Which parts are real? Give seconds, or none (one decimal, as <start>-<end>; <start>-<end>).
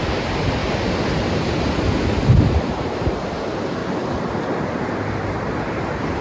0.6-2.4; 3.8-4.6